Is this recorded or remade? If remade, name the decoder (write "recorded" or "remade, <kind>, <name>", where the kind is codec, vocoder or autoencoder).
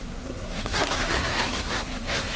remade, codec, SNAC